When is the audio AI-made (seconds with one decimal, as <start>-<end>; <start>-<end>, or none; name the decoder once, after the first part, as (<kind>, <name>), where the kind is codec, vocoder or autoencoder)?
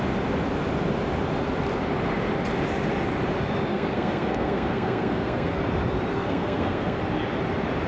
3.7-5.6 (codec, SNAC); 6.1-7.0